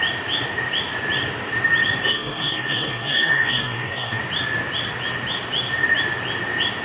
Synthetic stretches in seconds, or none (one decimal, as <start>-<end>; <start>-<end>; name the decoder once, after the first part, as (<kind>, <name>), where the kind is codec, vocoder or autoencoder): 2.0-4.2 (codec, SNAC)